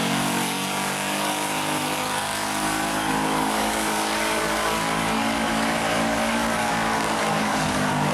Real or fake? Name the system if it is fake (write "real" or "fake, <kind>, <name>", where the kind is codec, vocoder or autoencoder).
fake, codec, DAC